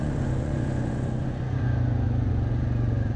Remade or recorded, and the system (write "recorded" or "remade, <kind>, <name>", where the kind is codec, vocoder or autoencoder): remade, vocoder, Vocos